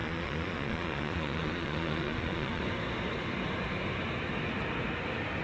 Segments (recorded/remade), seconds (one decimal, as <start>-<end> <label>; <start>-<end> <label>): 0.0-2.6 remade; 2.6-5.4 recorded